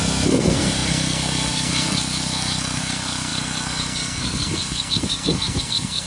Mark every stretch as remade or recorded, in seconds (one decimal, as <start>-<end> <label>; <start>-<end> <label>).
0.0-6.1 remade